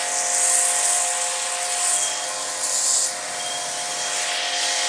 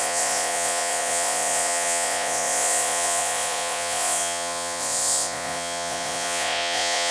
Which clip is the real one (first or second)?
first